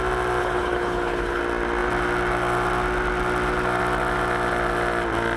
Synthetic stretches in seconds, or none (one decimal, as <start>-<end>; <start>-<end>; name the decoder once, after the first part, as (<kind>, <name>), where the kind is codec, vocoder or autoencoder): 0.4-1.4 (codec, HILCodec)